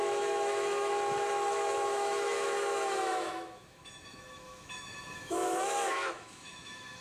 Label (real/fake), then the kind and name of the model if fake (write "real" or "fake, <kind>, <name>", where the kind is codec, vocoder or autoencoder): fake, autoencoder, DAC-VAE